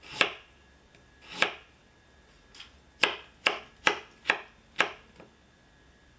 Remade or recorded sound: recorded